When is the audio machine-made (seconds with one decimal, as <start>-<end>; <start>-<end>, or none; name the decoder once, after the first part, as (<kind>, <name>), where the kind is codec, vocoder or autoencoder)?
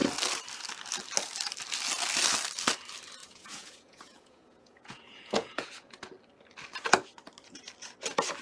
3.2-6.1 (vocoder, Vocos)